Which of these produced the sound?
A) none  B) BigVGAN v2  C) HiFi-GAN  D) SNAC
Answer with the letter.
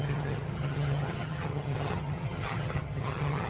C